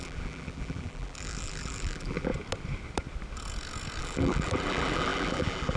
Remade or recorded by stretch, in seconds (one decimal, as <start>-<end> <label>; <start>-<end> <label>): 0.0-2.3 remade; 2.3-4.0 recorded; 4.0-5.8 remade